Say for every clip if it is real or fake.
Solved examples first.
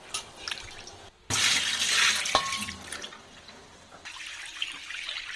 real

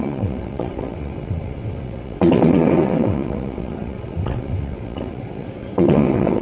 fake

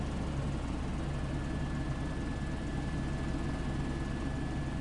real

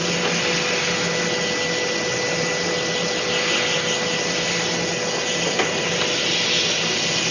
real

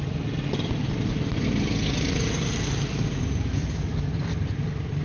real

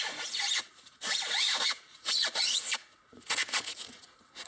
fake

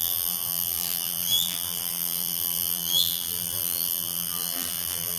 fake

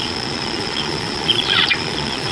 fake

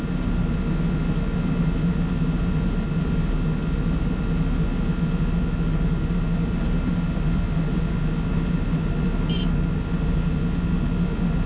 real